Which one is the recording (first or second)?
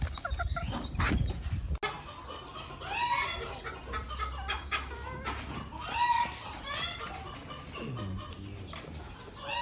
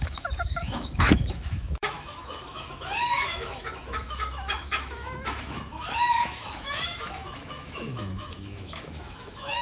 first